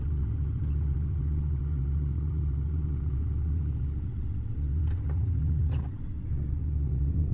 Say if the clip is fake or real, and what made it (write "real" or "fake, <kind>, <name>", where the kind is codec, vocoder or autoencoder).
fake, vocoder, WaveNeXt